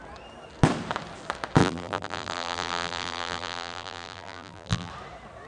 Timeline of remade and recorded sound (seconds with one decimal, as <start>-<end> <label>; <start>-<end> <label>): 0.0-1.6 recorded; 1.6-4.9 remade; 4.9-5.5 recorded